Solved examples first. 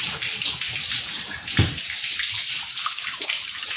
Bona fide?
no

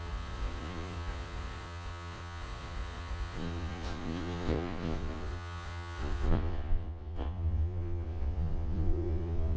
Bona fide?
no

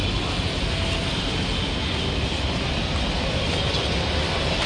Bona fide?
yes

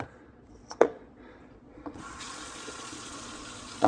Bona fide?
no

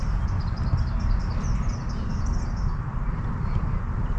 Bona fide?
yes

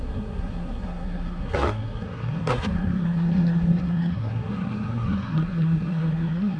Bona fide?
no